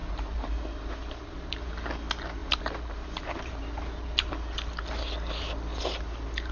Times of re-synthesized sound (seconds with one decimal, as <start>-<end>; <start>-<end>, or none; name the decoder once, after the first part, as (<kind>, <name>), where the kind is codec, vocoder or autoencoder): 0.0-1.7 (vocoder, BigVGAN v2); 2.4-4.3